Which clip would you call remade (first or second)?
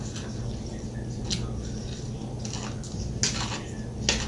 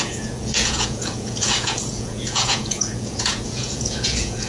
second